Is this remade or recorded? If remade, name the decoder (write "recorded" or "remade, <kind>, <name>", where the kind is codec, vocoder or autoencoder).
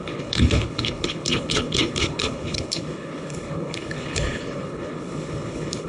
remade, codec, HILCodec